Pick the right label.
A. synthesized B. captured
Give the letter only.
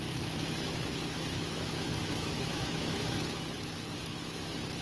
A